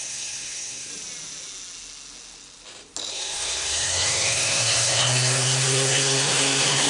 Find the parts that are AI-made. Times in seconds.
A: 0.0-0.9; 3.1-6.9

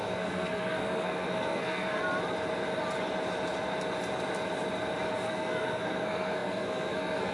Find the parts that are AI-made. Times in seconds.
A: 0.0-2.0; 5.1-7.3

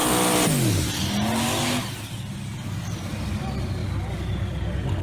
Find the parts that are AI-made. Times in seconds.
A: none

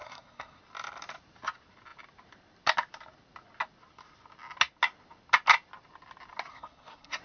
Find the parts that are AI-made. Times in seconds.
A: 0.0-0.6; 6.5-7.2

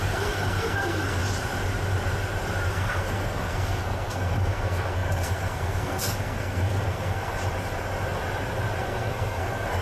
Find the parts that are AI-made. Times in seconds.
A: 0.0-1.2; 2.7-7.4; 8.8-9.8